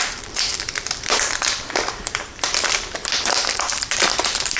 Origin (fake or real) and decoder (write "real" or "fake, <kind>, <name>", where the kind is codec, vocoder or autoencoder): fake, vocoder, BigVGAN v2